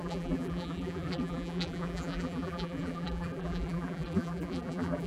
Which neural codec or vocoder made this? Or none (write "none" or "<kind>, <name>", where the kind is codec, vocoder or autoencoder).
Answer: vocoder, BigVGAN v2